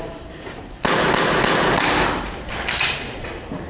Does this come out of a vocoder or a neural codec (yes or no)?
no